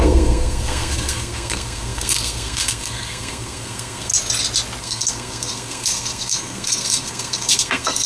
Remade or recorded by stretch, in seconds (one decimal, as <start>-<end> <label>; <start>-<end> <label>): 0.0-4.1 remade; 4.1-4.8 recorded; 4.8-8.1 remade